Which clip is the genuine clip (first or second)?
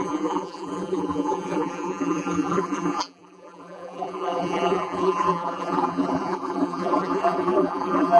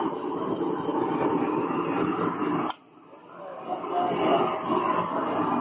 second